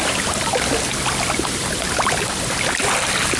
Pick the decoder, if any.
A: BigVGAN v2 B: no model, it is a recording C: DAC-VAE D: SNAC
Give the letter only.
B